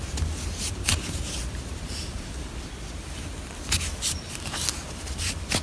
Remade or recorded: recorded